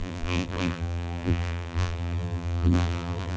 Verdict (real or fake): fake